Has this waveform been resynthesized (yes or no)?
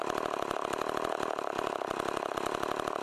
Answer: no